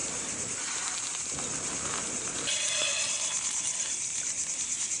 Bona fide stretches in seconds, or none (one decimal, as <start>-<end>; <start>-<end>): 0.0-5.0